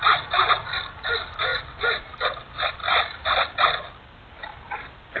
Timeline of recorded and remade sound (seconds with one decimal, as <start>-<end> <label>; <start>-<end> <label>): 0.0-5.2 recorded